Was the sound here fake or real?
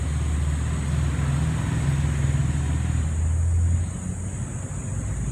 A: real